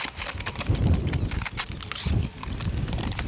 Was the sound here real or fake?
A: real